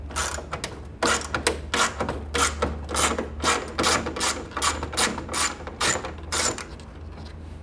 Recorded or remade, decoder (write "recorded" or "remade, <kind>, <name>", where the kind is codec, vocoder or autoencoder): recorded